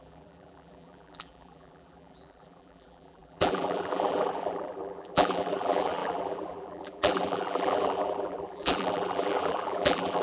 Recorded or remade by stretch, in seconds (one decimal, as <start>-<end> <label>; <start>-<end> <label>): 0.0-10.2 remade